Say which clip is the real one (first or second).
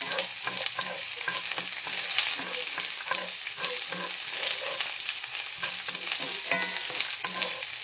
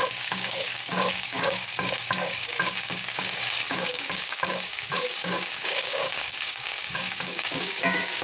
first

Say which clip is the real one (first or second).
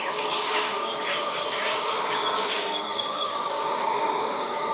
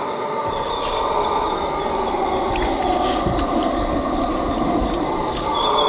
second